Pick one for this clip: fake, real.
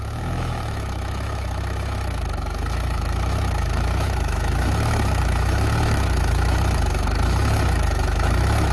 fake